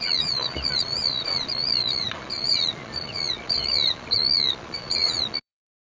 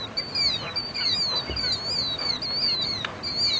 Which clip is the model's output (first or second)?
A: first